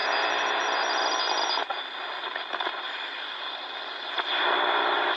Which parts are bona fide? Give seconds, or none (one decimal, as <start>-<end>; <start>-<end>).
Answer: 0.0-1.6; 4.4-5.2